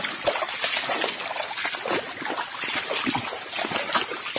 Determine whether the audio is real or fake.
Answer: real